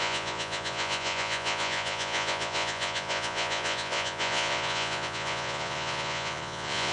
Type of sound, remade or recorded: remade